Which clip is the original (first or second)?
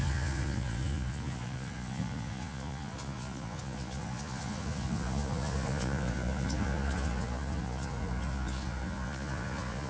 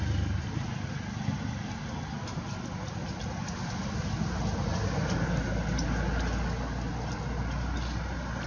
second